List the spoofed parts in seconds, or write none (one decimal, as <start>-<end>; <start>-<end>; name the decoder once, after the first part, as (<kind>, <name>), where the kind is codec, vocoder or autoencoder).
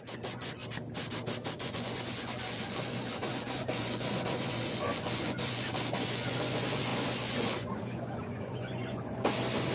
0.0-0.6 (vocoder, Vocos); 1.5-9.7